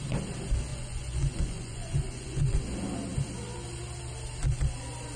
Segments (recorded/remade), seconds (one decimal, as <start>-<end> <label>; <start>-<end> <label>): 0.0-0.7 recorded; 0.7-2.6 remade; 2.6-5.2 recorded